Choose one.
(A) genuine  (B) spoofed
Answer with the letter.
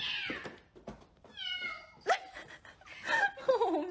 A